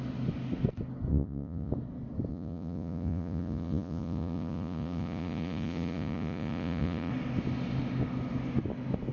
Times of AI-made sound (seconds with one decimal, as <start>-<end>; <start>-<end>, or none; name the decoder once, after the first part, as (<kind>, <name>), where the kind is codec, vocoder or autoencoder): 1.1-1.7 (vocoder, Vocos); 2.3-7.1